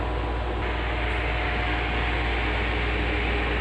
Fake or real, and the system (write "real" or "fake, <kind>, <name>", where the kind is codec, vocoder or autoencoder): real